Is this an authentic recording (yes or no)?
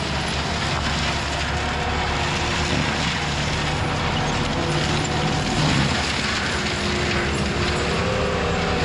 yes